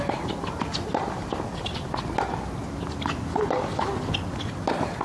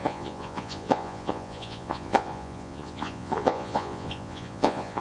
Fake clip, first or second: second